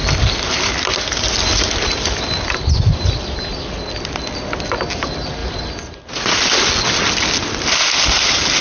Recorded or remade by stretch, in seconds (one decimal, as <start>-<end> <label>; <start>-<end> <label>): 0.0-8.6 recorded